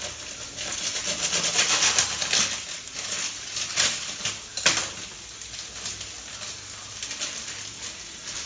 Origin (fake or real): real